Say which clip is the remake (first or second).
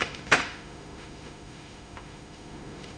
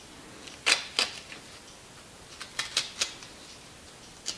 first